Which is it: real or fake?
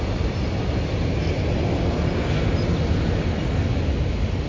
real